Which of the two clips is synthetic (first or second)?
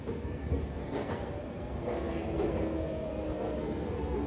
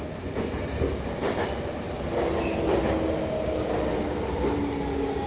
first